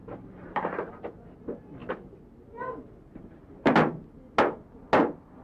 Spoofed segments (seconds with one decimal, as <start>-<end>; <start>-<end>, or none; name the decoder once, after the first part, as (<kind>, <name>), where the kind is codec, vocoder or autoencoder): 0.0-0.9 (vocoder, BigVGAN v2)